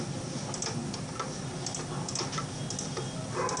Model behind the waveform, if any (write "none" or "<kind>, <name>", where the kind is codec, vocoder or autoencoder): none